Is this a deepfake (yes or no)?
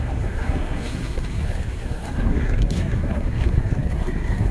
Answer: yes